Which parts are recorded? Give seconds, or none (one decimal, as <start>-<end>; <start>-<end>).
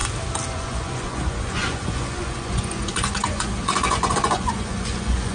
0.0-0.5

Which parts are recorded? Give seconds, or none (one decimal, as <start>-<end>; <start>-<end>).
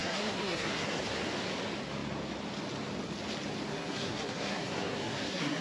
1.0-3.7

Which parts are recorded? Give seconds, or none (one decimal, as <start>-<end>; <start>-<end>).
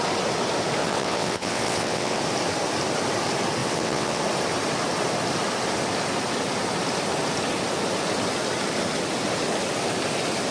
0.0-0.8; 2.2-3.6; 4.2-10.5